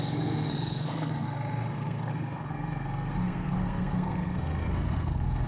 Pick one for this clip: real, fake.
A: fake